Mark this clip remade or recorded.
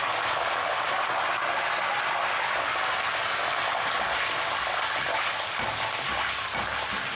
recorded